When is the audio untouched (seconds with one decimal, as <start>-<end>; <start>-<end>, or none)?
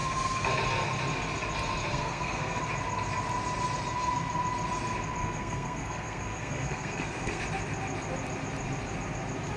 0.5-1.9; 2.6-5.2; 7.4-9.6